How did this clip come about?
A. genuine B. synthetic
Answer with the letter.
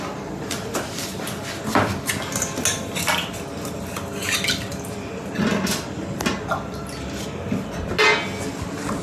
A